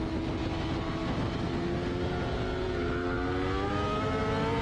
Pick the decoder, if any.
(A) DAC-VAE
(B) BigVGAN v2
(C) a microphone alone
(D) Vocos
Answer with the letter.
C